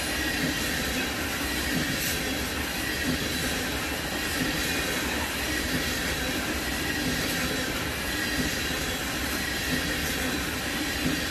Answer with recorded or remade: recorded